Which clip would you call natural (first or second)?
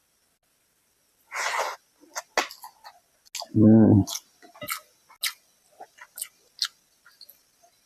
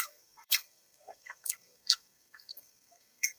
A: first